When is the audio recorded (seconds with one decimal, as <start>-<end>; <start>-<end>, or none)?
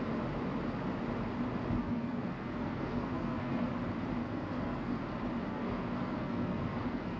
0.0-1.8; 3.7-4.2; 5.0-5.5